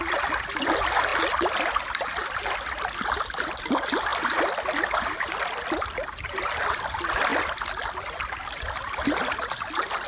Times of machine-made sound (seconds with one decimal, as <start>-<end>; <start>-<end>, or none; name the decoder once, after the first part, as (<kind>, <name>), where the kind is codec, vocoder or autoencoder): none

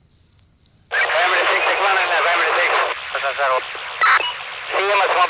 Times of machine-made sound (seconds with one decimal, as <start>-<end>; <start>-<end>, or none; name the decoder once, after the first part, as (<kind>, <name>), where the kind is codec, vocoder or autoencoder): none

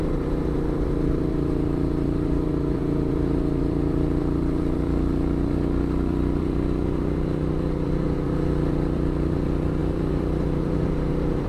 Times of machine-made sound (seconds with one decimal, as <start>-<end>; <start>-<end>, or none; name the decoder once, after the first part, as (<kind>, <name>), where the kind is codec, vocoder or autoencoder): 0.0-11.5 (vocoder, BigVGAN v2)